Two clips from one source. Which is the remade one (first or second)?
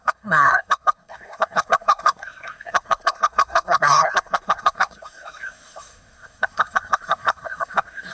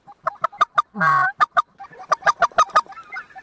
first